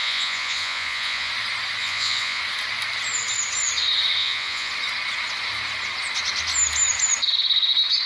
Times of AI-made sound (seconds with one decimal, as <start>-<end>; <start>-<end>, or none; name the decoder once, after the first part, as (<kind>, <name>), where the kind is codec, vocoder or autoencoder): 0.0-1.3 (vocoder, Vocos); 1.8-2.4; 4.2-4.7